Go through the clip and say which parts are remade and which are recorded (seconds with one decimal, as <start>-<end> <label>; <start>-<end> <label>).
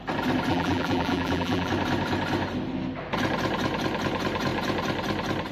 0.0-0.5 recorded; 0.5-1.7 remade; 1.7-5.5 recorded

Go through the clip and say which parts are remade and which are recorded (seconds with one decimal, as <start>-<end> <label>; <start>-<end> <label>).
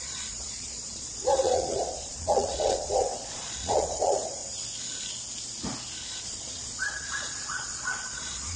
0.0-4.4 remade; 4.4-6.1 recorded; 6.1-8.6 remade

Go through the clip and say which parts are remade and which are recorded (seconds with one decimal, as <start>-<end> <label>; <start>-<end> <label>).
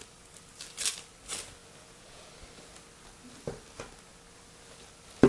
0.0-1.6 recorded; 1.6-2.3 remade; 2.3-5.3 recorded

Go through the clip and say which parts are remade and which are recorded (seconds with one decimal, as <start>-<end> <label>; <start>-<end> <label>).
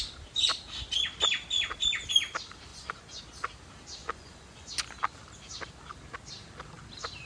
0.0-2.7 recorded; 2.7-3.2 remade; 3.2-4.0 recorded; 4.0-4.7 remade; 4.7-7.3 recorded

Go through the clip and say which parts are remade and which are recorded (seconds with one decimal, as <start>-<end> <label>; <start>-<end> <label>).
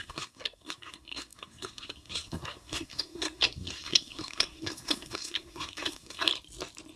0.0-6.3 remade; 6.3-7.0 recorded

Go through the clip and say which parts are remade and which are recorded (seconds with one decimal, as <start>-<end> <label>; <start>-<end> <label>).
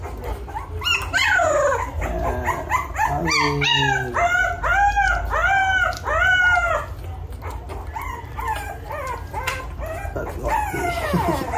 0.0-11.6 recorded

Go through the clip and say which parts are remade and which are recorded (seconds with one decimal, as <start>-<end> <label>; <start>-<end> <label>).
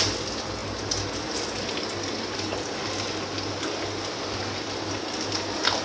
0.0-5.8 recorded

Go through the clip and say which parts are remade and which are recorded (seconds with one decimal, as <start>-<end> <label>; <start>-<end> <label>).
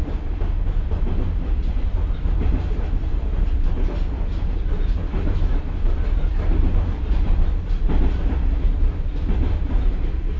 0.0-10.4 recorded